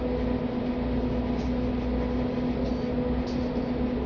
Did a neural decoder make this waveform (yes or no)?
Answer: no